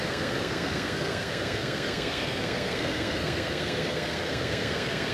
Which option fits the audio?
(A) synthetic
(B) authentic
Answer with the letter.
A